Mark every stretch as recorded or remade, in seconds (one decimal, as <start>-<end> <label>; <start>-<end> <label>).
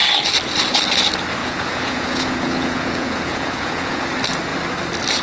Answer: 0.0-1.4 recorded; 1.4-4.1 remade; 4.1-5.2 recorded